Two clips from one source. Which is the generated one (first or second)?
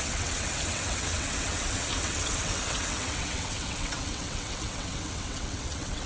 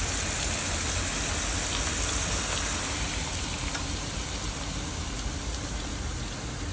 first